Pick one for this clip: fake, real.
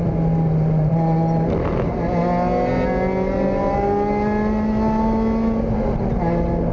real